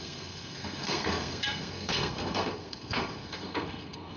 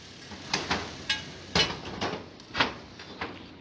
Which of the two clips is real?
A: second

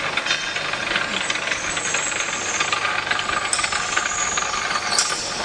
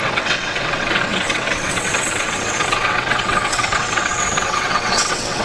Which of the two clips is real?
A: first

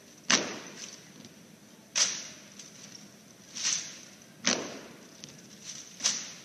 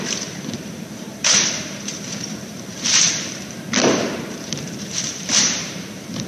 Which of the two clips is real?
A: first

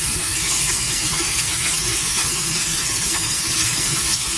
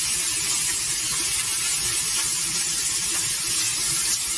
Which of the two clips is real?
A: second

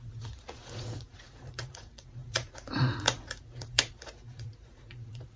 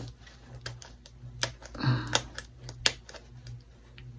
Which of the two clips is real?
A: second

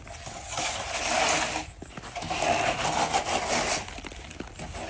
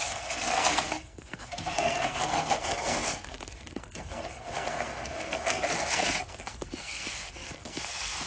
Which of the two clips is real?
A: first